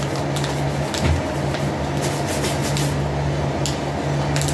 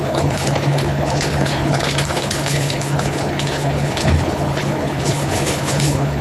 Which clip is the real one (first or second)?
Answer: first